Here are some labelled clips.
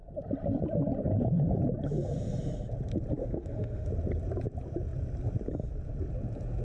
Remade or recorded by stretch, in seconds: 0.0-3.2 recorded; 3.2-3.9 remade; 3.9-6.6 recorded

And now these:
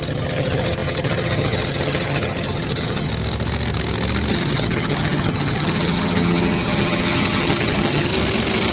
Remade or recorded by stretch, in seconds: 0.0-3.1 remade; 3.1-4.3 recorded; 4.3-8.1 remade; 8.1-8.7 recorded

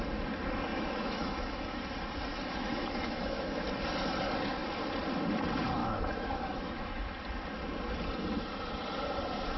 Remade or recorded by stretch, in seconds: 0.0-0.7 recorded; 0.7-1.8 remade; 1.8-2.3 recorded; 2.3-3.6 remade; 3.6-5.8 recorded; 5.8-7.1 remade; 7.1-9.6 recorded

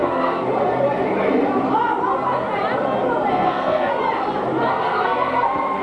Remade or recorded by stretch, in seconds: 0.0-0.5 remade; 0.5-3.3 recorded; 3.3-3.9 remade; 3.9-4.7 recorded; 4.7-5.8 remade

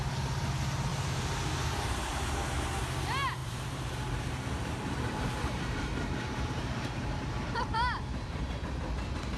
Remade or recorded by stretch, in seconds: 0.0-0.9 recorded; 0.9-2.3 remade; 2.3-3.4 recorded; 3.4-8.6 remade; 8.6-9.4 recorded

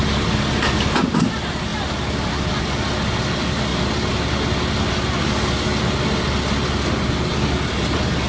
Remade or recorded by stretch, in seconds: 0.0-8.3 recorded

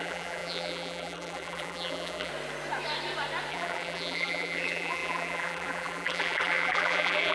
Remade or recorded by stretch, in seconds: 0.0-2.3 remade; 2.3-3.5 recorded; 3.5-7.3 remade